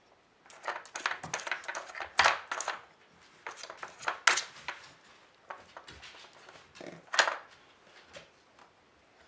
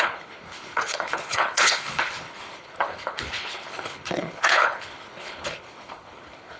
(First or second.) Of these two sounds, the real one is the first